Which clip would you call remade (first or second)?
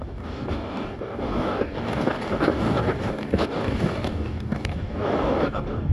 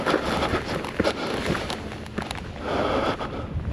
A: first